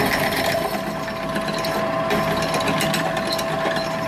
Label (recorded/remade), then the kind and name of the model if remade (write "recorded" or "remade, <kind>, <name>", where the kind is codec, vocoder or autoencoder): recorded